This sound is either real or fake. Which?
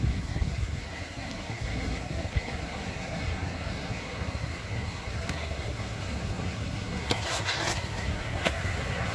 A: fake